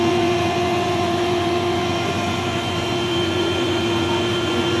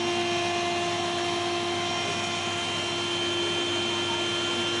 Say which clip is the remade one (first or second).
first